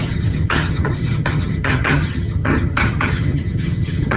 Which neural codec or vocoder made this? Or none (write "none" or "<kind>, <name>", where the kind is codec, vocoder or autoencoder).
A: vocoder, HiFi-GAN